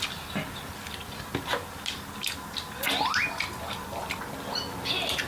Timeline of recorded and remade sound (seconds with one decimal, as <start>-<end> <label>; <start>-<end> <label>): 0.0-1.5 remade; 1.5-4.4 recorded; 4.4-5.3 remade